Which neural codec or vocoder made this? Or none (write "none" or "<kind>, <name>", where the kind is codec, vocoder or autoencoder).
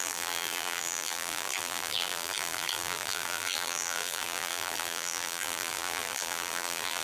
vocoder, BigVGAN v2